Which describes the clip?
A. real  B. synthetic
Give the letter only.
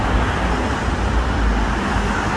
A